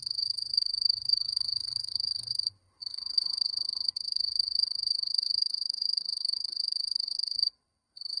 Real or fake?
fake